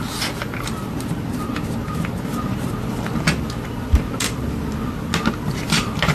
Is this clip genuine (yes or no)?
yes